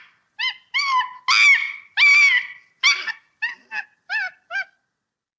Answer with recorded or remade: recorded